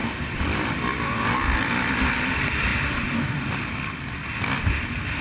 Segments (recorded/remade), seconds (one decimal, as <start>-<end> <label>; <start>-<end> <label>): 0.0-5.2 recorded

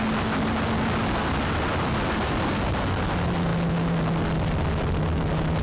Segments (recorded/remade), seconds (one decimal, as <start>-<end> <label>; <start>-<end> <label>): 0.0-5.6 recorded

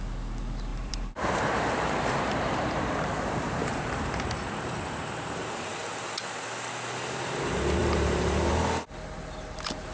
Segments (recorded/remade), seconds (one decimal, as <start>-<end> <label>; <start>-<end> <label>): 0.0-0.7 recorded; 0.7-5.7 remade; 5.7-7.8 recorded; 7.8-8.5 remade; 8.5-9.9 recorded

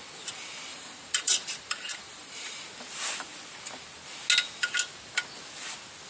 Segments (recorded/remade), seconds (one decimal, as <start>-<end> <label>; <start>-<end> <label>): 0.0-0.7 recorded; 0.7-2.6 remade; 2.6-6.1 recorded

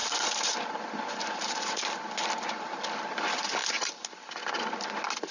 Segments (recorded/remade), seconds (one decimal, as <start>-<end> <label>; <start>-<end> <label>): 0.0-2.8 remade; 2.8-3.6 recorded; 3.6-4.1 remade; 4.1-5.3 recorded

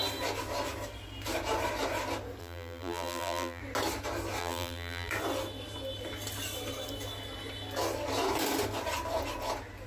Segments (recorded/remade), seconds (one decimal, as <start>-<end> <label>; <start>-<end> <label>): 0.0-2.4 recorded; 2.4-3.6 remade; 3.6-4.4 recorded; 4.4-5.1 remade; 5.1-9.9 recorded